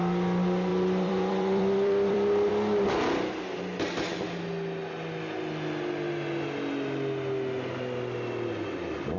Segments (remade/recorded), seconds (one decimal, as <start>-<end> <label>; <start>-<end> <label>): 0.0-0.7 recorded; 0.7-2.5 remade; 2.5-9.2 recorded